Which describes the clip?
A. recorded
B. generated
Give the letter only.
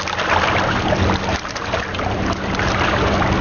A